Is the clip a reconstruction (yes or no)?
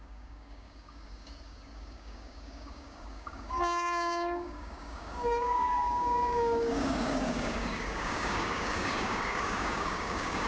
yes